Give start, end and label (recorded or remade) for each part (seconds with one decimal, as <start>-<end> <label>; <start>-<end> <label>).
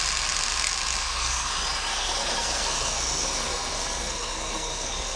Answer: 0.0-1.0 recorded; 1.0-1.5 remade; 1.5-1.9 recorded; 1.9-5.2 remade